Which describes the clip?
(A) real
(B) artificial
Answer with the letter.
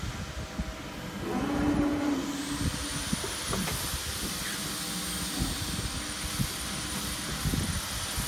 A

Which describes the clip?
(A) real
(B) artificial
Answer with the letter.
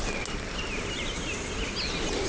A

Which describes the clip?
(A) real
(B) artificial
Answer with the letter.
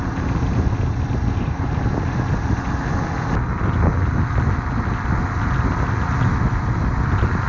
A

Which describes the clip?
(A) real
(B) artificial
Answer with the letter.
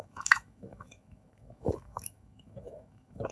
B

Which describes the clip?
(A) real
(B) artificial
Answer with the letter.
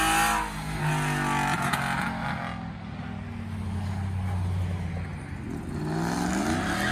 A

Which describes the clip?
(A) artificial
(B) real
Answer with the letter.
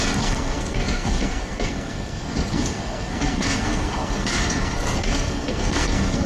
A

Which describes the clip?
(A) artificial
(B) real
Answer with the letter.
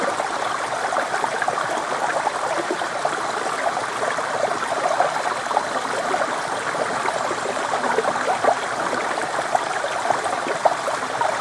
B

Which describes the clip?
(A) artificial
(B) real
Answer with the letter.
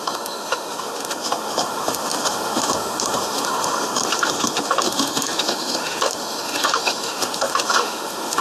A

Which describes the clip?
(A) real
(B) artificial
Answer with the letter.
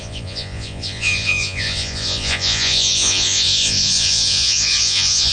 B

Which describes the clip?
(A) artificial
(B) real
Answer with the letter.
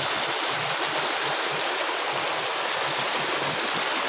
B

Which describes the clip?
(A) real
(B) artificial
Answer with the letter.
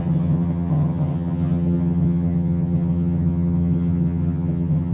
B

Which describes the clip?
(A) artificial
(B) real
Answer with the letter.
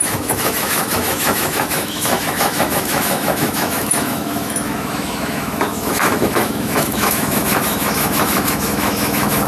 A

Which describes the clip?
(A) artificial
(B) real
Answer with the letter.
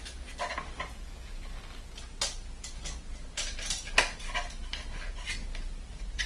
B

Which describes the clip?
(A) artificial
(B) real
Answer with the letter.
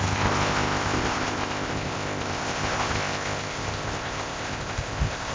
A